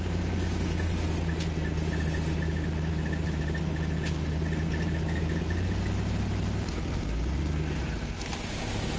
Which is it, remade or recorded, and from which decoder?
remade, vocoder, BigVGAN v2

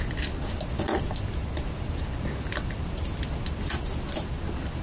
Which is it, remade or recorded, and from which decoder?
recorded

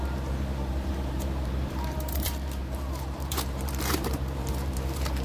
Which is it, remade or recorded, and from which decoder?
remade, vocoder, BigVGAN v2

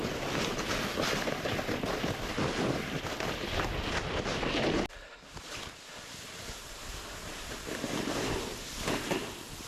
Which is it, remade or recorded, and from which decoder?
recorded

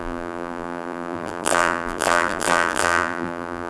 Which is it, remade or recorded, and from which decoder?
remade, vocoder, BigVGAN v2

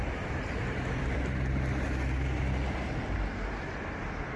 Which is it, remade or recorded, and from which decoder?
remade, vocoder, BigVGAN v2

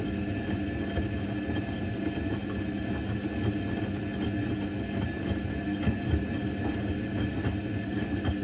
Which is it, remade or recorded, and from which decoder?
recorded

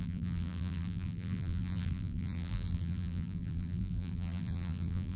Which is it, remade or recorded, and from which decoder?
remade, vocoder, BigVGAN v2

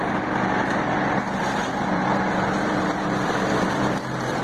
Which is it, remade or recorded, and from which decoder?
recorded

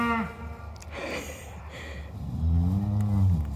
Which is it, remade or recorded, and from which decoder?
recorded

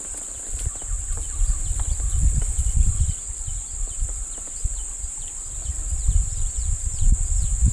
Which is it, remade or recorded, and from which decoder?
remade, vocoder, BigVGAN v2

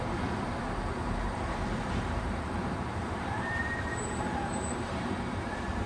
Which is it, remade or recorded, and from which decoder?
remade, vocoder, BigVGAN v2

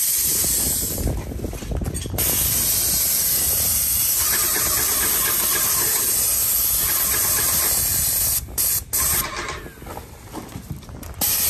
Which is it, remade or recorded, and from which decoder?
recorded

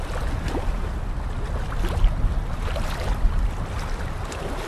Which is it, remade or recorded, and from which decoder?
recorded